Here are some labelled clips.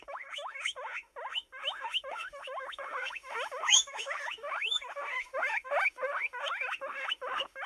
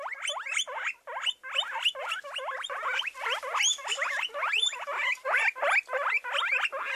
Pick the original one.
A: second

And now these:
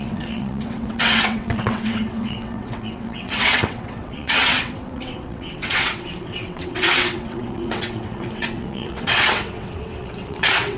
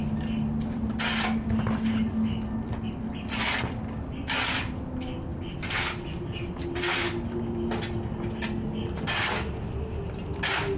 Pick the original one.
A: second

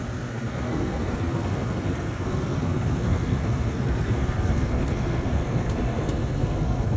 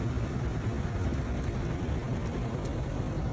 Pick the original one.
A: second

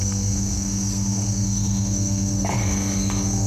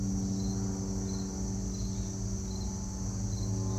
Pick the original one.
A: second